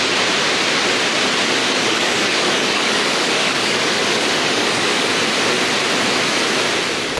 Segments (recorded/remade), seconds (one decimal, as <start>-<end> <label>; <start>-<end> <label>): 0.0-1.6 recorded; 1.6-5.1 remade; 5.1-7.2 recorded